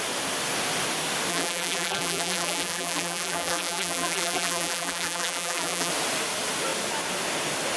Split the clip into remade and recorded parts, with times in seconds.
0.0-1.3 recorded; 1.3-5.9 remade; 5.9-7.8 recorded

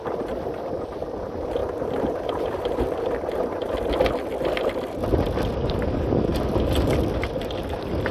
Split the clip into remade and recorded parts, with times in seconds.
0.0-6.3 remade; 6.3-7.6 recorded; 7.6-8.1 remade

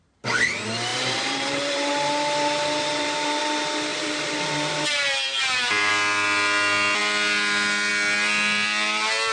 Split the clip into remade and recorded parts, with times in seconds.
0.0-0.9 recorded; 0.9-3.4 remade; 3.4-3.9 recorded; 3.9-5.9 remade; 5.9-9.3 recorded